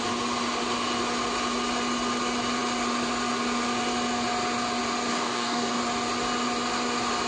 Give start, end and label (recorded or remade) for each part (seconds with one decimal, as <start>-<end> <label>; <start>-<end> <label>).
0.0-5.1 recorded; 5.1-5.8 remade; 5.8-7.3 recorded